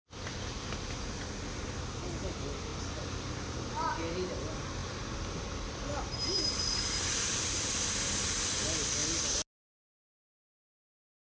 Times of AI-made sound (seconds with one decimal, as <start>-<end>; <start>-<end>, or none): none